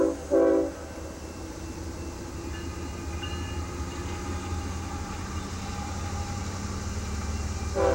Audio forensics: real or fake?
real